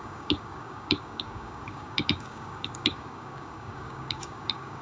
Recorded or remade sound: remade